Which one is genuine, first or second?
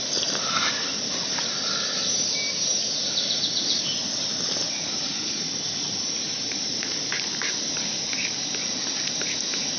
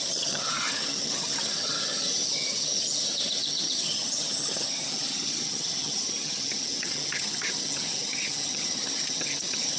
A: first